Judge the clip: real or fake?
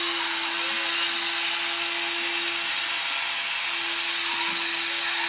real